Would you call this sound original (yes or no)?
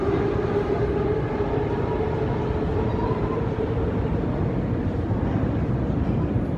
no